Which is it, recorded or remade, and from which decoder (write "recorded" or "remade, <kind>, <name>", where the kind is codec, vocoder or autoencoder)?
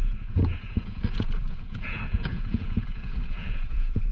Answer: remade, vocoder, Vocos